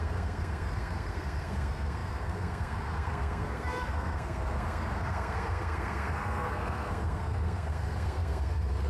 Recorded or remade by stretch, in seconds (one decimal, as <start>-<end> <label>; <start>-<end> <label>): 0.0-8.9 remade